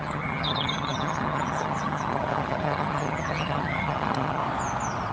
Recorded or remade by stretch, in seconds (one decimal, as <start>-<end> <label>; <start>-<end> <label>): 0.0-4.4 remade; 4.4-5.1 recorded